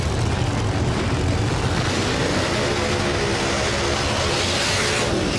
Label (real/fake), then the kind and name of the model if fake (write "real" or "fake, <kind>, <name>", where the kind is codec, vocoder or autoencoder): real